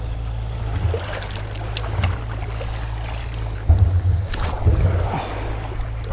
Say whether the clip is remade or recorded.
recorded